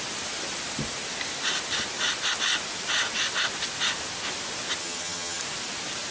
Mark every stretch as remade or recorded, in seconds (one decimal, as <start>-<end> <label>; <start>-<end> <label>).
0.0-4.8 recorded; 4.8-5.4 remade; 5.4-6.1 recorded